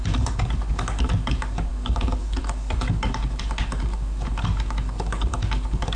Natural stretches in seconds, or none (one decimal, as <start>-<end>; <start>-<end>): none